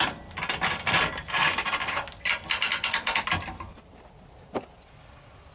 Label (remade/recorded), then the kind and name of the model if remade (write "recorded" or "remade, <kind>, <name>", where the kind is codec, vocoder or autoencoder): recorded